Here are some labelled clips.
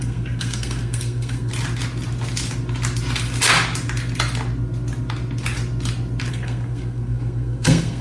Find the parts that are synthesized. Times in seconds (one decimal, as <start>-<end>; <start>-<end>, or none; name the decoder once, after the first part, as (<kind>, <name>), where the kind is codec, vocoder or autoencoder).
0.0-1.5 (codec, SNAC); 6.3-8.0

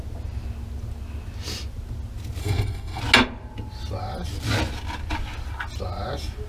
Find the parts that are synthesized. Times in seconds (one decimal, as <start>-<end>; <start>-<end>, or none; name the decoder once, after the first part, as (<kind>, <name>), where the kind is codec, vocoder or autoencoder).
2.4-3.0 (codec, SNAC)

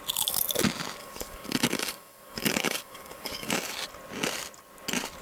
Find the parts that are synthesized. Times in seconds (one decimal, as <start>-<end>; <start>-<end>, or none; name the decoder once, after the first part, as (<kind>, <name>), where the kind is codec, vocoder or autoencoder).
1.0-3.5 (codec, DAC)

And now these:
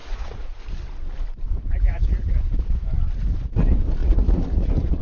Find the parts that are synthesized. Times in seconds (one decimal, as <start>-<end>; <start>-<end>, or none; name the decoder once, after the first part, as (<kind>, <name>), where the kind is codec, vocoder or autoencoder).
0.0-0.6 (vocoder, Vocos); 1.5-2.9; 4.0-5.0

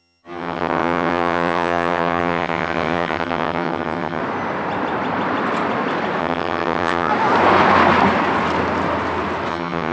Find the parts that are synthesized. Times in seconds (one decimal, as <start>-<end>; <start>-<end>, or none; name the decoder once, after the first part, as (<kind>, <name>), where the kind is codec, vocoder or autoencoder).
0.0-4.2 (vocoder, HiFi-GAN); 6.2-7.1; 9.5-9.9